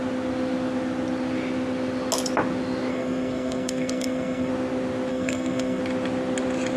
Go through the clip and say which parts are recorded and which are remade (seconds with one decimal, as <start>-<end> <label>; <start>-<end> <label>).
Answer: 0.0-2.9 recorded; 2.9-4.5 remade; 4.5-5.1 recorded; 5.1-5.8 remade; 5.8-6.8 recorded